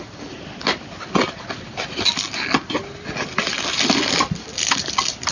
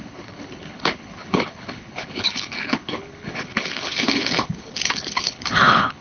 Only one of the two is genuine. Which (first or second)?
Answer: first